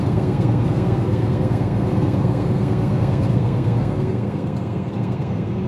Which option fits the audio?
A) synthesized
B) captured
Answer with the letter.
A